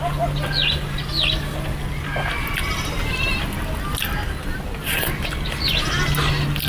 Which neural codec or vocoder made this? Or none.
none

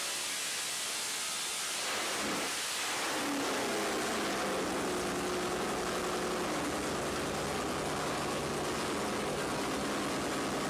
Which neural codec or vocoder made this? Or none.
none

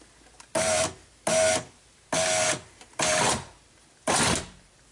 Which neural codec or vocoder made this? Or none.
none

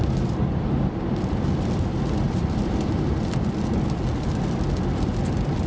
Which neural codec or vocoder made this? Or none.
vocoder, BigVGAN v2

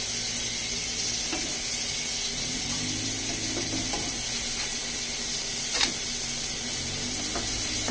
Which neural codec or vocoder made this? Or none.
none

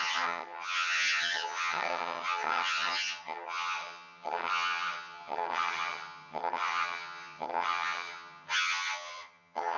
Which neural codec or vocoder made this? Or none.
vocoder, HiFi-GAN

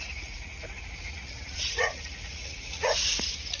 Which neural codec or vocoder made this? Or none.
vocoder, Vocos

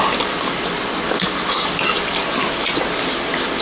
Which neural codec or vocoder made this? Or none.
none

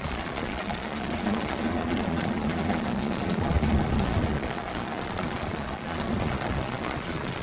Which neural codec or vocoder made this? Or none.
vocoder, Vocos